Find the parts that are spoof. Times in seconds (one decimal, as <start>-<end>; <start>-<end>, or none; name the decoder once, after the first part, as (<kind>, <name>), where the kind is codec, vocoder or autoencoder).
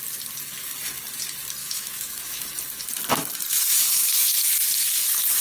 1.6-2.5 (autoencoder, DAC-VAE); 3.7-4.3